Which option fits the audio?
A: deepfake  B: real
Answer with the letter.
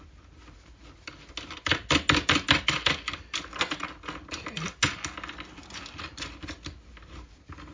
B